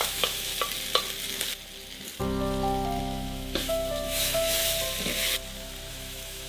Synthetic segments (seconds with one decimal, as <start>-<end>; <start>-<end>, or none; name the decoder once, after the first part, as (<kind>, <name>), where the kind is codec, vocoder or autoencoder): 0.0-0.5 (autoencoder, DAC-VAE); 3.0-4.6; 5.9-6.5